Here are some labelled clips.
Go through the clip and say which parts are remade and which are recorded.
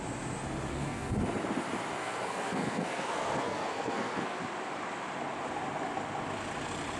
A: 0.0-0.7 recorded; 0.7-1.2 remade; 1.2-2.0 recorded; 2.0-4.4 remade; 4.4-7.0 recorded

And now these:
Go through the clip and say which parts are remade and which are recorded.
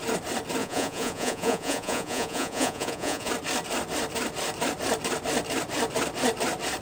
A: 0.0-0.6 recorded; 0.6-3.3 remade; 3.3-6.8 recorded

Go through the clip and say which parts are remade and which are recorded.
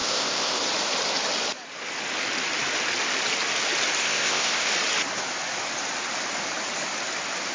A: 0.0-0.6 remade; 0.6-4.0 recorded; 4.0-4.7 remade; 4.7-7.5 recorded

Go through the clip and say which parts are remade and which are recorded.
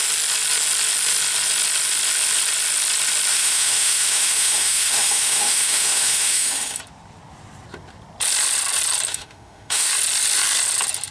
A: 0.0-3.3 recorded; 3.3-6.8 remade; 6.8-9.1 recorded; 9.1-9.9 remade; 9.9-11.1 recorded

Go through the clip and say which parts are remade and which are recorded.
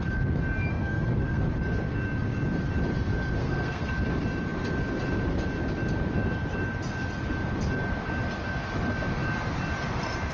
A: 0.0-0.7 recorded; 0.7-1.4 remade; 1.4-3.4 recorded; 3.4-3.9 remade; 3.9-10.3 recorded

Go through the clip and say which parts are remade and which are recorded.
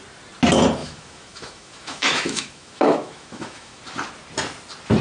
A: 0.0-0.8 recorded; 0.8-3.8 remade; 3.8-5.0 recorded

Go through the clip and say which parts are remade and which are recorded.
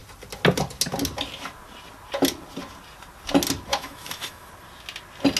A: 0.0-3.7 recorded; 3.7-4.5 remade; 4.5-5.4 recorded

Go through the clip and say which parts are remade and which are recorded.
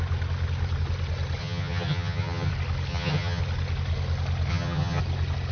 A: 0.0-1.4 recorded; 1.4-2.5 remade; 2.5-2.9 recorded; 2.9-3.4 remade; 3.4-4.5 recorded; 4.5-5.0 remade; 5.0-5.5 recorded